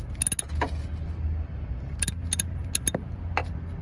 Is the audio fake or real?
real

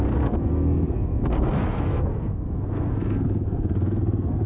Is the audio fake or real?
fake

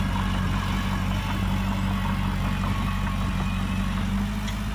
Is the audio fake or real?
real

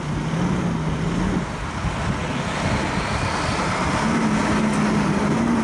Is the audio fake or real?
real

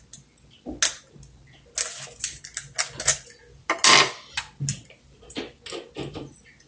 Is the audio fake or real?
real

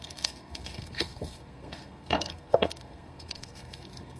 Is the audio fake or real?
fake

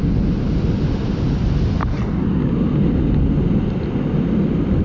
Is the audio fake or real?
real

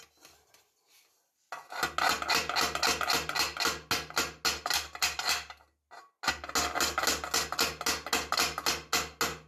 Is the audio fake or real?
real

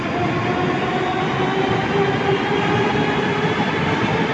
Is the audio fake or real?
real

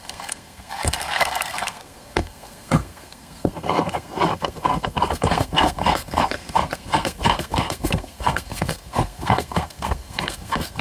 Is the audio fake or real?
fake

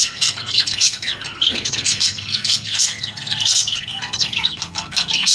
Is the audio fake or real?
fake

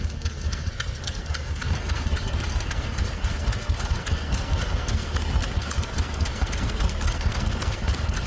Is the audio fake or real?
fake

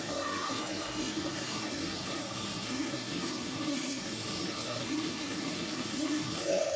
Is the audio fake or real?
fake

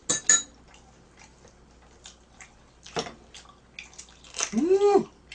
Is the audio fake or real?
real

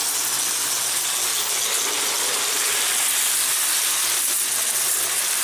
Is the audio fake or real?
real